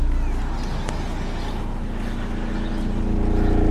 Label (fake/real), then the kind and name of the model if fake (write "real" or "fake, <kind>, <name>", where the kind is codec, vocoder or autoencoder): real